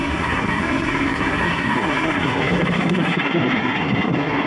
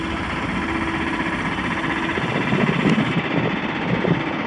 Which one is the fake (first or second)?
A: first